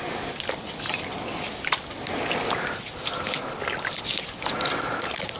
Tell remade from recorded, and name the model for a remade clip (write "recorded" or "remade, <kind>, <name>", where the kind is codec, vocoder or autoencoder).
recorded